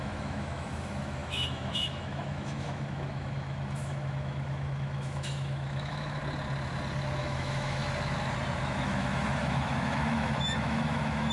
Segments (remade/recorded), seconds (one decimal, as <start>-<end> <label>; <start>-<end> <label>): 0.0-6.2 remade; 6.2-7.2 recorded; 7.2-7.8 remade; 7.8-8.6 recorded; 8.6-11.3 remade